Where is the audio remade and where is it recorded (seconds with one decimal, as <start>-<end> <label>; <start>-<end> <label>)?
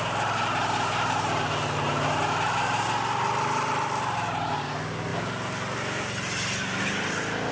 0.0-7.5 recorded